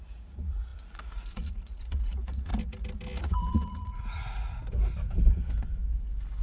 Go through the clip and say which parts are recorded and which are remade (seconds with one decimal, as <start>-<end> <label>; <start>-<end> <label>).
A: 0.0-2.5 remade; 2.5-3.2 recorded; 3.2-4.6 remade; 4.6-6.4 recorded